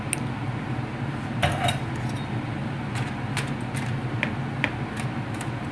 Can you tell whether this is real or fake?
real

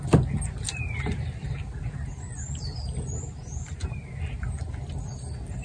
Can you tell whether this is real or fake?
real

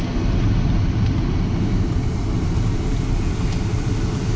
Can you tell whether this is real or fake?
real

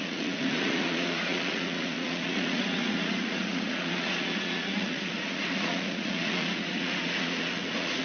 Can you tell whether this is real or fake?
fake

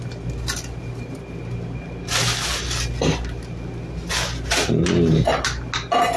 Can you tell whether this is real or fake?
real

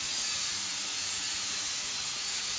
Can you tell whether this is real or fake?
fake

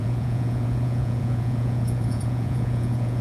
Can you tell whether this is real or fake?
fake